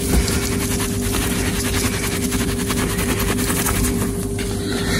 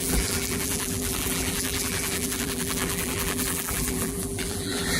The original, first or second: first